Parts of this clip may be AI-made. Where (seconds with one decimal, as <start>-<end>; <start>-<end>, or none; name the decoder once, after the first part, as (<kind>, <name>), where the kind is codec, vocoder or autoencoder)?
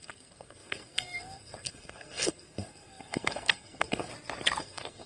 0.0-4.1 (codec, SNAC); 4.6-5.1